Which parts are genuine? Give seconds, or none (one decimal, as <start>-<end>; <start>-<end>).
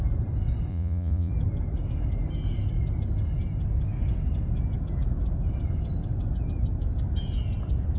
0.0-0.7; 1.3-8.0